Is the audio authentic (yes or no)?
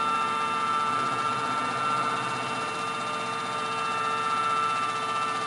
yes